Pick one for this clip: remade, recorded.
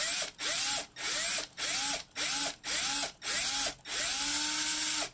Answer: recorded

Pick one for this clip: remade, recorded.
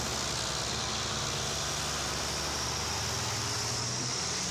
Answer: recorded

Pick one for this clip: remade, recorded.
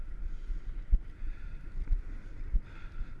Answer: recorded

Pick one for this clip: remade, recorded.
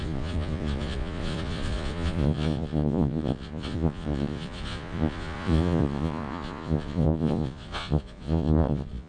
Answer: remade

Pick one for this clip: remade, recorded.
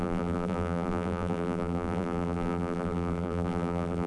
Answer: remade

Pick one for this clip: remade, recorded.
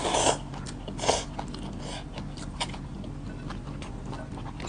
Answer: recorded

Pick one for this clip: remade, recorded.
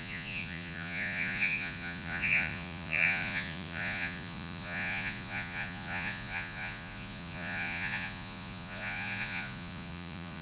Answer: remade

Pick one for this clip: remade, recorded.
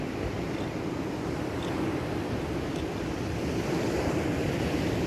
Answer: recorded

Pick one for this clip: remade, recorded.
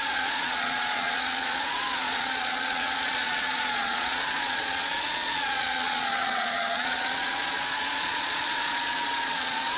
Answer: remade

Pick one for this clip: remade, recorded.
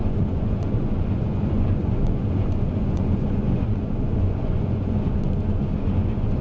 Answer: remade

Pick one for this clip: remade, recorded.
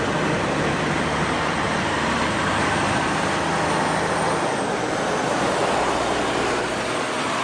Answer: recorded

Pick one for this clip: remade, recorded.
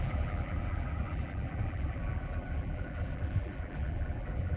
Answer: remade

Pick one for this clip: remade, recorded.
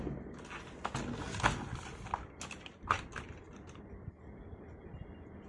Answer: recorded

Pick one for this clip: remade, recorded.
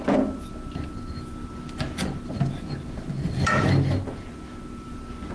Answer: recorded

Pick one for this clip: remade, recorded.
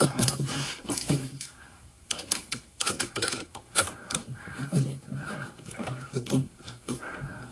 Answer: remade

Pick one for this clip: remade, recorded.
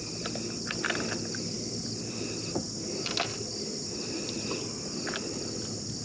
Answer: recorded